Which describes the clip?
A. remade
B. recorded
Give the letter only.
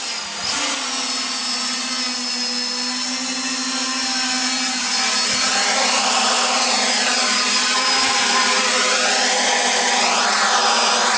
B